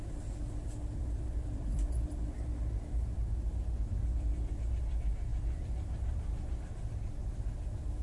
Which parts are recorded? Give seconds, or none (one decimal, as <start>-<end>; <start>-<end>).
0.0-1.0; 2.1-5.3; 6.7-8.0